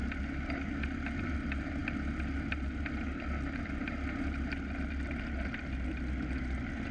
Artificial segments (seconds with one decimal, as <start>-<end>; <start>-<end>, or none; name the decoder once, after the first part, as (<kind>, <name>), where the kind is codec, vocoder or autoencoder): none